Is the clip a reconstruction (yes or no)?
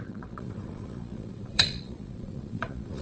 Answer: yes